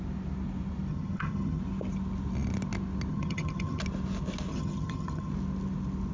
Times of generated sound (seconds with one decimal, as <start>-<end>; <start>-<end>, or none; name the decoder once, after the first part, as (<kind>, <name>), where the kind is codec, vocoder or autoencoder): 0.9-1.6 (vocoder, HiFi-GAN); 3.1-3.8; 4.5-5.3